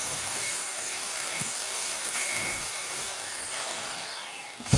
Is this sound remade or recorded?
remade